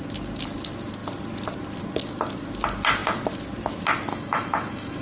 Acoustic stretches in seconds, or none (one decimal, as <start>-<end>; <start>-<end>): 0.0-4.1